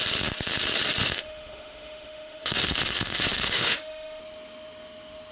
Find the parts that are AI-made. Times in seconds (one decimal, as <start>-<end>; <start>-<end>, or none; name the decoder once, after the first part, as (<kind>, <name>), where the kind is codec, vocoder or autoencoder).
1.0-4.2 (autoencoder, DAC-VAE)